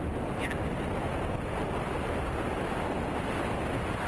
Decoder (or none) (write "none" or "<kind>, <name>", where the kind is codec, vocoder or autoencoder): none